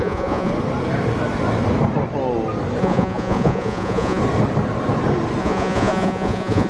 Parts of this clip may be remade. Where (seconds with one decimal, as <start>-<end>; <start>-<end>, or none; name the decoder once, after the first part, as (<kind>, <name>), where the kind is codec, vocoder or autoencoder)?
0.0-0.5 (vocoder, Vocos); 2.8-4.2; 5.4-6.7